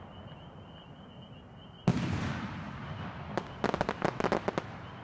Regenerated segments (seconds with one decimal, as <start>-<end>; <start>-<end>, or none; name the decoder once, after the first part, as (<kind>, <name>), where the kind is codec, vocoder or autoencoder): none